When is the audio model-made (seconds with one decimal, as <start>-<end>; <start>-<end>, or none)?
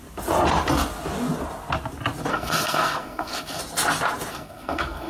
2.3-3.6; 4.3-5.1